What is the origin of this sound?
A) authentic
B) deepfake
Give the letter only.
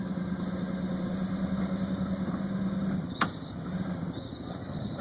A